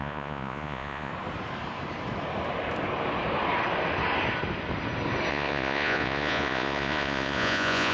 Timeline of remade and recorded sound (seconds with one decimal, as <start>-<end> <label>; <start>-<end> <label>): 0.0-1.1 remade; 1.1-5.3 recorded; 5.3-7.9 remade

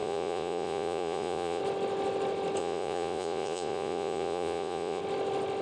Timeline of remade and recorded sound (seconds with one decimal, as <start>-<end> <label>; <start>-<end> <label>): 0.0-1.6 remade; 1.6-2.6 recorded; 2.6-5.0 remade; 5.0-5.6 recorded

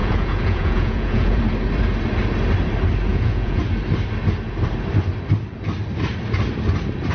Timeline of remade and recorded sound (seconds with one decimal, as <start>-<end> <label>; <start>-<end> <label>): 0.0-1.4 remade; 1.4-3.1 recorded; 3.1-3.6 remade; 3.6-7.1 recorded

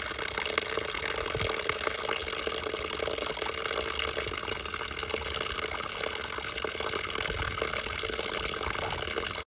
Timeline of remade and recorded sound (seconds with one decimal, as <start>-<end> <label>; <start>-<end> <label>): 0.0-9.5 recorded

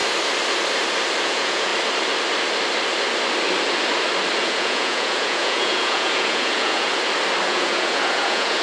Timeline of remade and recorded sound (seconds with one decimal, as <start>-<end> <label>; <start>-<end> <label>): 0.0-1.2 recorded; 1.2-1.7 remade; 1.7-4.4 recorded; 4.4-6.9 remade; 6.9-7.5 recorded; 7.5-8.6 remade

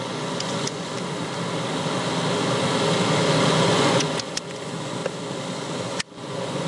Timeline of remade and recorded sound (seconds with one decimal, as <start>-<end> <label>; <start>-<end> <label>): 0.0-0.9 remade; 0.9-3.5 recorded; 3.5-5.0 remade; 5.0-5.5 recorded; 5.5-6.7 remade